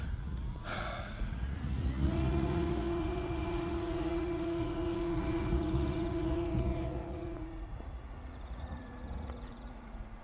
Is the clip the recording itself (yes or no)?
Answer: no